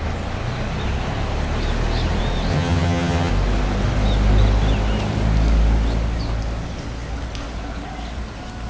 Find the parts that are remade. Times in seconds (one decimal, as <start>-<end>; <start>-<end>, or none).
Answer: 2.5-3.3